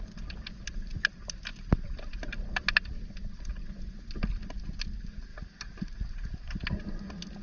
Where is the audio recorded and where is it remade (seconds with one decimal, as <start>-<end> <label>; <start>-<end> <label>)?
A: 0.0-7.4 recorded